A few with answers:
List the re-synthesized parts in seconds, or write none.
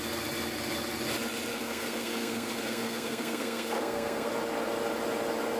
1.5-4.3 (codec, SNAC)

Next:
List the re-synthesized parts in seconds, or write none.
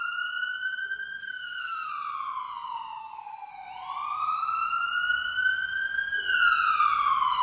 1.2-1.9 (codec, SNAC); 3.0-3.5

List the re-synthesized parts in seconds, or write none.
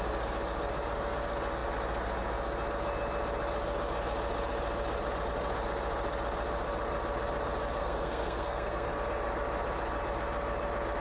7.8-8.9 (codec, SNAC)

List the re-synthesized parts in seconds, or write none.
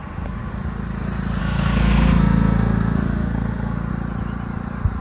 0.0-0.5 (codec, SNAC); 1.4-3.9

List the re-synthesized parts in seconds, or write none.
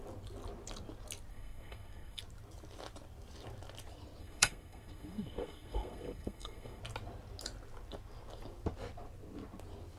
1.3-2.2 (codec, SNAC); 4.2-6.8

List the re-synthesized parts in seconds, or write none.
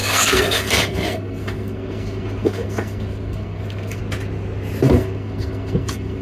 0.0-4.0 (codec, SNAC); 4.8-6.2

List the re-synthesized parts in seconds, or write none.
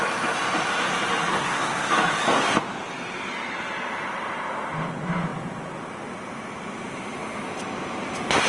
1.3-1.9 (codec, SNAC)